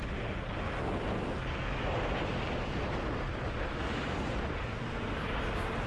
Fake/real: real